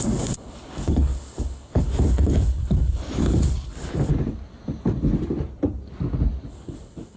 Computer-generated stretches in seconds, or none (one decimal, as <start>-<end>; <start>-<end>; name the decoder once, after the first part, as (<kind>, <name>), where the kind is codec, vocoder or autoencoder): 0.0-4.1 (codec, HILCodec); 6.5-7.2